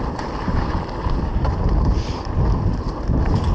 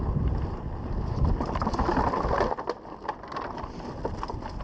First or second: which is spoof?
first